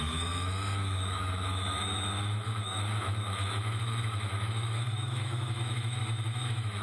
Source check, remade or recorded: remade